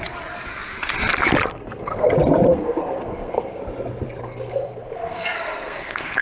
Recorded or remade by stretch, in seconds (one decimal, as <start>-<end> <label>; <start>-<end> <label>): 0.0-1.5 recorded; 1.5-2.1 remade; 2.1-2.5 recorded; 2.5-3.6 remade; 3.6-4.2 recorded; 4.2-6.2 remade